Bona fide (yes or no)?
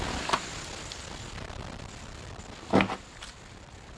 yes